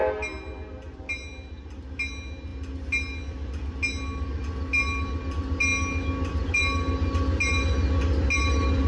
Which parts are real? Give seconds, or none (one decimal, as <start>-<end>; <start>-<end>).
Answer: 0.0-8.9